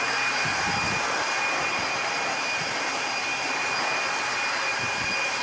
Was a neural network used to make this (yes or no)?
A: no